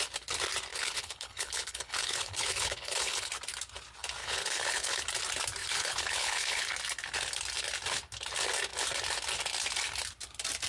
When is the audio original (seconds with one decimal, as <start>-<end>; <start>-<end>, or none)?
0.0-0.7; 3.3-4.2; 5.0-5.6; 6.7-10.7